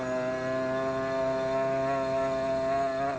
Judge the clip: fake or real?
real